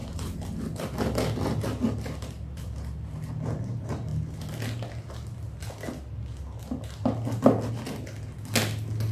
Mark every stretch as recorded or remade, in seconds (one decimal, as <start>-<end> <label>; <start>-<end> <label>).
0.0-3.3 remade; 3.3-9.1 recorded